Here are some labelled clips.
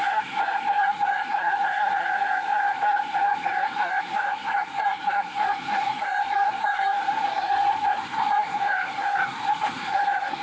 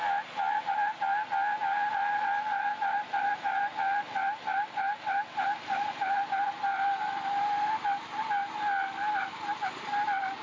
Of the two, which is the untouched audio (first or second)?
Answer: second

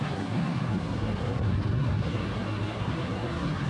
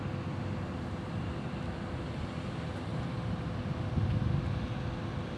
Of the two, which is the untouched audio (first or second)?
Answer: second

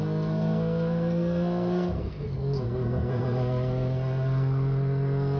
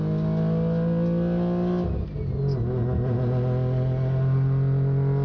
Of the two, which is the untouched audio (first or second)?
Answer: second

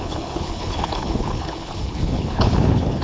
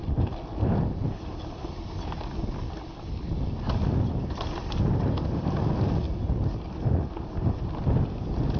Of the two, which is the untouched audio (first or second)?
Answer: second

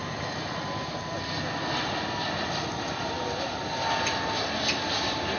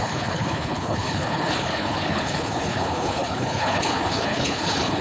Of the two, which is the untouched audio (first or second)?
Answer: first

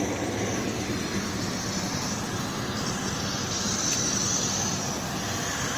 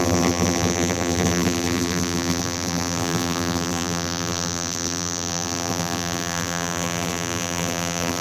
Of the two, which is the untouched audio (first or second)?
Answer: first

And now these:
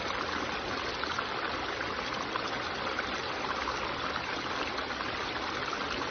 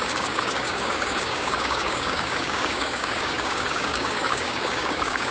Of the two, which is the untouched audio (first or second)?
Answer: first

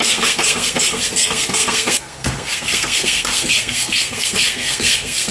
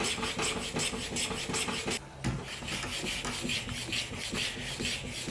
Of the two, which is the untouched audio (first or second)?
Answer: second